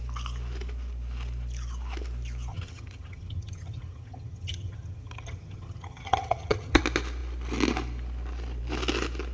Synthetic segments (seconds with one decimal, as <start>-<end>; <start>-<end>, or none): 2.5-6.8